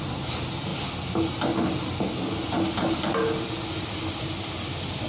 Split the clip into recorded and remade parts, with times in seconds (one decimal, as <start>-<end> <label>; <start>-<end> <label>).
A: 0.0-5.1 recorded